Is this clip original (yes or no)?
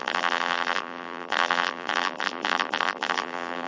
no